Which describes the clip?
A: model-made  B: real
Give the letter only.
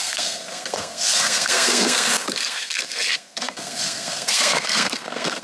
A